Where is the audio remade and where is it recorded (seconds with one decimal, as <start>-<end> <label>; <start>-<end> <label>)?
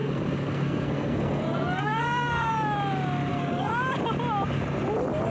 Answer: 0.0-2.5 remade; 2.5-3.3 recorded; 3.3-3.7 remade; 3.7-5.3 recorded